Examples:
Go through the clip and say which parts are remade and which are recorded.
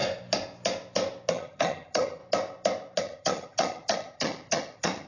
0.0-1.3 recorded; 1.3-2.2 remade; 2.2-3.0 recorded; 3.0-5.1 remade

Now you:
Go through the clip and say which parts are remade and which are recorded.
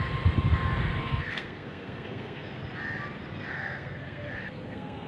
0.0-1.0 recorded; 1.0-2.6 remade; 2.6-3.5 recorded; 3.5-5.1 remade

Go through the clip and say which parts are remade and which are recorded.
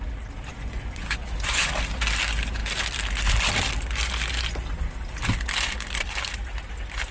0.0-0.5 recorded; 0.5-1.7 remade; 1.7-7.1 recorded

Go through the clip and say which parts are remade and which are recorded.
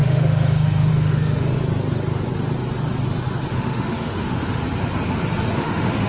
0.0-1.6 remade; 1.6-3.5 recorded; 3.5-4.6 remade; 4.6-5.5 recorded; 5.5-6.1 remade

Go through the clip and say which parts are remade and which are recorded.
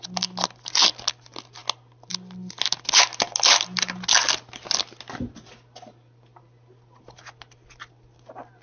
0.0-8.6 recorded